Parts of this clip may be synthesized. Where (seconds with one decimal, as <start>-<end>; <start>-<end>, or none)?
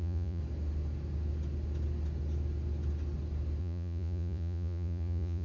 0.0-0.4; 3.6-5.4